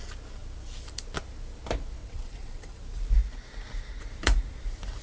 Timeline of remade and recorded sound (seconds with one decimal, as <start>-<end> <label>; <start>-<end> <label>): 0.0-2.0 recorded; 2.0-2.8 remade; 2.8-5.0 recorded